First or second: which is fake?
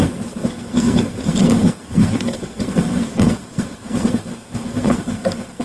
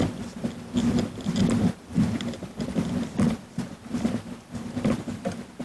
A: first